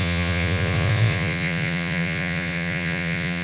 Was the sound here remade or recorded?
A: remade